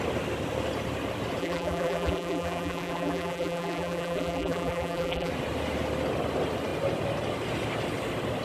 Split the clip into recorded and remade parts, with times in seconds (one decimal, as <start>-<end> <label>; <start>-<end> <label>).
0.0-1.4 recorded; 1.4-5.3 remade; 5.3-8.4 recorded